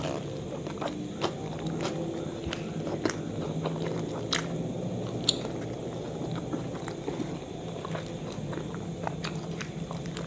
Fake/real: fake